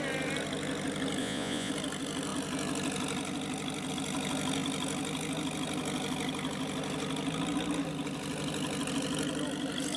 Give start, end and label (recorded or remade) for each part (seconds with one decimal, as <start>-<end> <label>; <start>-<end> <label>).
0.0-1.2 recorded; 1.2-1.7 remade; 1.7-10.0 recorded